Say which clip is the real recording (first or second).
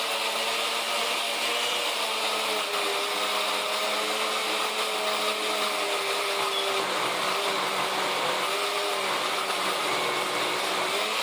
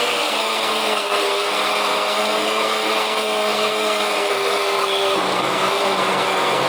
first